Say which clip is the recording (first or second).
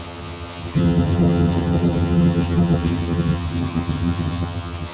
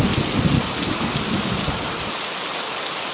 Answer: second